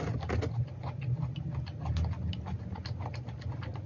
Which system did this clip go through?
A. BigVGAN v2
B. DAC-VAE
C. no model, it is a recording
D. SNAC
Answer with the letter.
C